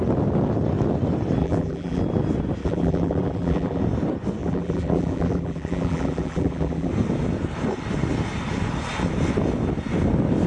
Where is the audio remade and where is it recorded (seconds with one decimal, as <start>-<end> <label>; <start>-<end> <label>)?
0.0-1.4 recorded; 1.4-2.0 remade; 2.0-2.6 recorded; 2.6-3.8 remade; 3.8-4.4 recorded; 4.4-6.9 remade; 6.9-10.5 recorded